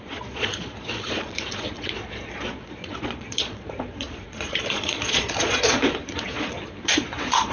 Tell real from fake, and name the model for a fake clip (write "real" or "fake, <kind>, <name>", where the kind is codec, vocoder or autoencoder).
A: fake, vocoder, Vocos